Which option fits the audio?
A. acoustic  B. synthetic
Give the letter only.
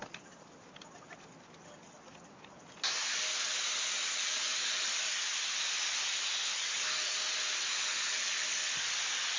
A